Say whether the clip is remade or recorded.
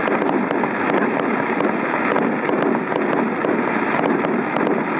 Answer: recorded